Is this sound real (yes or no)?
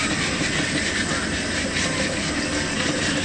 yes